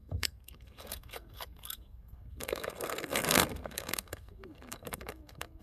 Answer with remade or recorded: remade